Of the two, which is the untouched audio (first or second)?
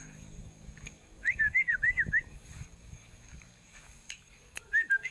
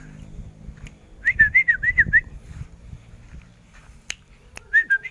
second